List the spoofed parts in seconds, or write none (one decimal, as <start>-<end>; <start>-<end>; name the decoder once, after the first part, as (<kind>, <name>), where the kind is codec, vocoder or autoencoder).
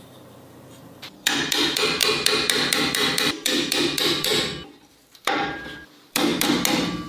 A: 0.0-2.0 (vocoder, BigVGAN v2); 2.8-4.3; 4.9-6.3